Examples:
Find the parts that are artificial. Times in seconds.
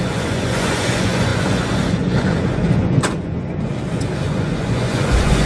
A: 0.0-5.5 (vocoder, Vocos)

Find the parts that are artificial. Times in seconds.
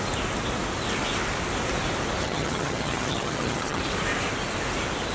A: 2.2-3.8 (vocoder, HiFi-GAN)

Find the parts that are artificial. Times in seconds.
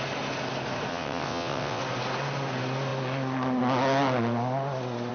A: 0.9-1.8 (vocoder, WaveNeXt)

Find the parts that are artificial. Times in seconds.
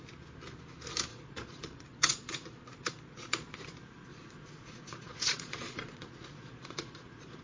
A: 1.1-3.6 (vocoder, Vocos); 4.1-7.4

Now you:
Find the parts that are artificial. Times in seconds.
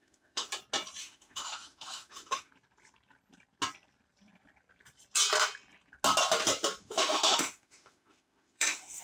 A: 0.0-0.5 (autoencoder, DAC-VAE); 1.0-2.5; 6.8-9.0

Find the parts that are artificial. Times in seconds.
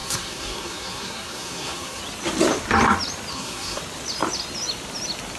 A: 0.0-2.0 (codec, SNAC); 3.3-3.8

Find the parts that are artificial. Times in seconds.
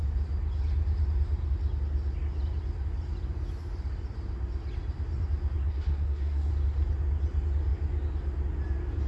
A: 5.6-6.5 (codec, SNAC)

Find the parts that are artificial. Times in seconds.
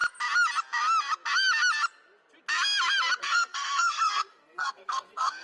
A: 3.2-5.4 (codec, SNAC)